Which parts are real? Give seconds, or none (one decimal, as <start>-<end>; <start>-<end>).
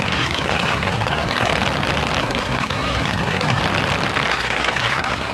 1.5-2.2; 3.6-4.3